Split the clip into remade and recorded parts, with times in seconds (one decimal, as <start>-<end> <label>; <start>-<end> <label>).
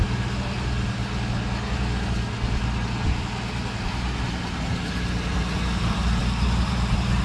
0.0-6.2 recorded; 6.2-7.2 remade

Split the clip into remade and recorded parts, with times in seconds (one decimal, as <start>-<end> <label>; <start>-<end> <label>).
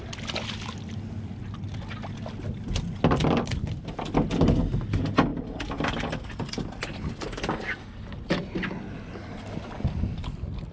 0.0-10.7 recorded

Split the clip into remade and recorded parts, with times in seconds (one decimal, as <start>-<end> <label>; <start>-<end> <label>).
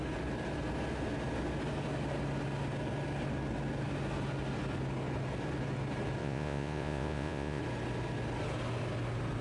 0.0-6.2 recorded; 6.2-7.6 remade; 7.6-9.4 recorded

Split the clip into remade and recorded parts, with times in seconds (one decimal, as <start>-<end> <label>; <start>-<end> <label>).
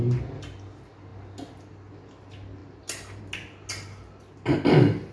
0.0-5.1 recorded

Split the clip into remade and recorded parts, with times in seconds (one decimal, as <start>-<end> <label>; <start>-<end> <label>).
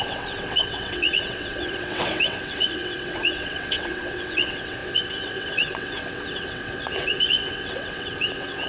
0.0-8.7 remade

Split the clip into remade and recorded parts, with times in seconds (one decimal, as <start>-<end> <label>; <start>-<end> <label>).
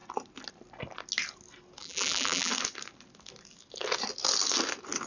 0.0-1.8 recorded; 1.8-2.5 remade; 2.5-5.1 recorded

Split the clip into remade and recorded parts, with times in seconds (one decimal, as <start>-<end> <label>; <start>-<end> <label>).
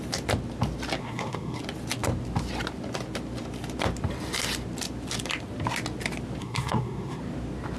0.0-1.0 recorded; 1.0-1.6 remade; 1.6-6.4 recorded; 6.4-7.2 remade; 7.2-7.8 recorded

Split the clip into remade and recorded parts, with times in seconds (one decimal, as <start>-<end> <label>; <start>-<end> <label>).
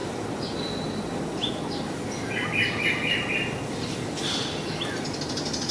0.0-5.7 recorded